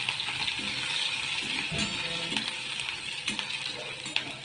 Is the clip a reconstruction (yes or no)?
no